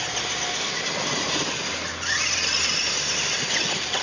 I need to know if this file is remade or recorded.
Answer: recorded